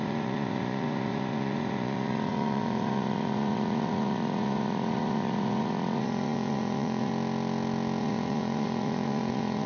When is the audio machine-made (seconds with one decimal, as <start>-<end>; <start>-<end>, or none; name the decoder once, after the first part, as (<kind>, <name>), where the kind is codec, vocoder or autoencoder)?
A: 0.0-7.1 (vocoder, Vocos); 8.0-9.7